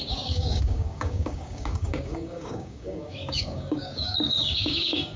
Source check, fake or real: fake